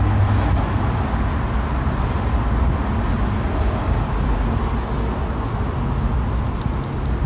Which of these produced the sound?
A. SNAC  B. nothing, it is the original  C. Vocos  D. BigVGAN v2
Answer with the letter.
B